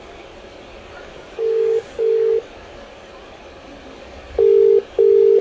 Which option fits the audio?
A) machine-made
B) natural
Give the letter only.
A